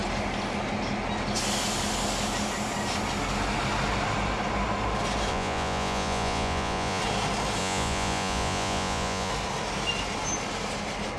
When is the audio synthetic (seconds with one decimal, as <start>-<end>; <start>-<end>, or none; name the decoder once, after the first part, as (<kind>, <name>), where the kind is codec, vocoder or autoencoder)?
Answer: 5.3-7.0 (vocoder, Vocos); 7.6-9.3